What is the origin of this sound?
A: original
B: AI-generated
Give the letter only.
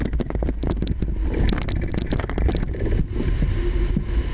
A